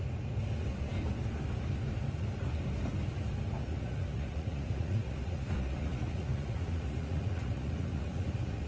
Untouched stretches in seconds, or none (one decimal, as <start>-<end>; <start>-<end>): 0.0-3.6